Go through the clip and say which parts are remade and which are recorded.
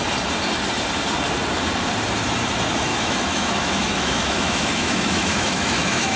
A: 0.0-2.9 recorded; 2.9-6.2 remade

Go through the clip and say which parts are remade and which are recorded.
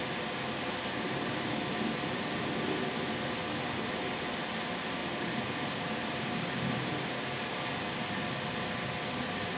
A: 0.0-5.0 recorded; 5.0-7.1 remade; 7.1-9.6 recorded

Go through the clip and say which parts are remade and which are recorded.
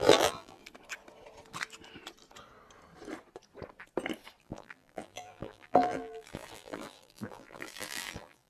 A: 0.0-0.6 remade; 0.6-4.4 recorded; 4.4-8.5 remade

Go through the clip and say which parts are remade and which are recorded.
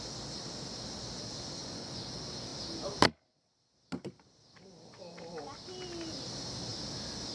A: 0.0-1.6 recorded; 1.6-2.1 remade; 2.1-7.3 recorded